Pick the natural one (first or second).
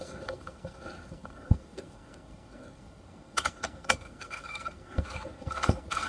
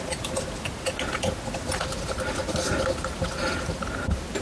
second